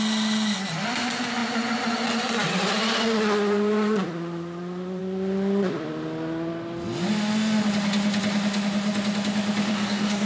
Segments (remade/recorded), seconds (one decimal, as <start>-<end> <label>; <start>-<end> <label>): 0.0-9.7 recorded; 9.7-10.3 remade